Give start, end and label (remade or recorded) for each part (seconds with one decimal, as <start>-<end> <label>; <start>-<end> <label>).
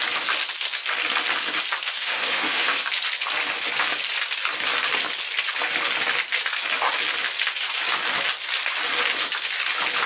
0.0-2.0 recorded; 2.0-2.8 remade; 2.8-10.1 recorded